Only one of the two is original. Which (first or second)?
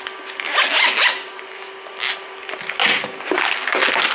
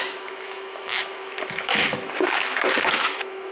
first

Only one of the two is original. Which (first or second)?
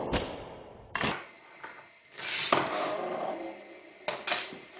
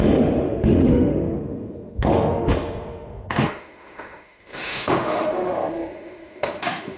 first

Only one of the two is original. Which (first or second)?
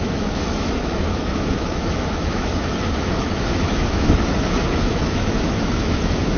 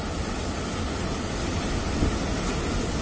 second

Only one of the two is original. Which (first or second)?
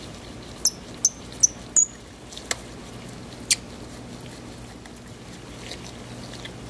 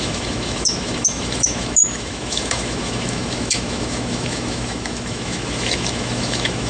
first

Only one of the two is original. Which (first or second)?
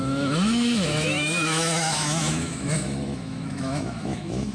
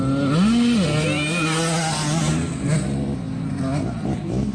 second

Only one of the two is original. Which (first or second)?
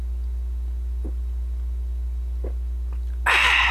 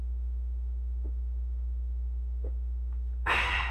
first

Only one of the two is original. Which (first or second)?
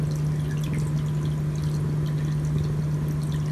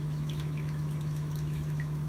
first